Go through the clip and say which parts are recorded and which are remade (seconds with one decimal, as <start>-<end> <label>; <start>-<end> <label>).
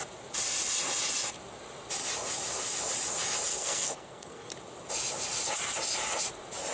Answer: 0.0-3.5 recorded; 3.5-4.5 remade; 4.5-6.7 recorded